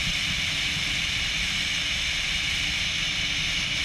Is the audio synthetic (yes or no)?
no